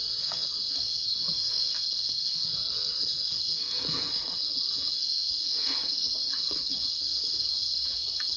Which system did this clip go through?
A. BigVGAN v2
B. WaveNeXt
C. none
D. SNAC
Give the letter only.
D